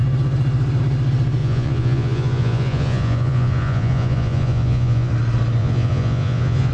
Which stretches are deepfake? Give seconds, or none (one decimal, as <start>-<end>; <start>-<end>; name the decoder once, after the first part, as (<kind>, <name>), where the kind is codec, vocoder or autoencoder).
1.4-5.1 (vocoder, Vocos); 5.6-6.7